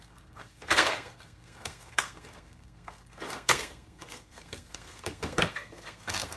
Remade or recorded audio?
remade